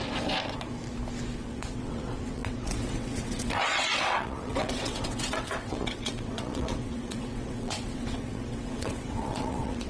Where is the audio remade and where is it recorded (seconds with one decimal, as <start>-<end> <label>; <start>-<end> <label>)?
0.0-1.5 recorded; 1.5-9.9 remade